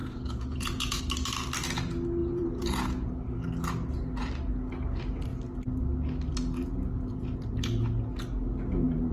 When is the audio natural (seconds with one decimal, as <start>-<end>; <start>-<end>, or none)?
1.0-2.2; 3.1-9.1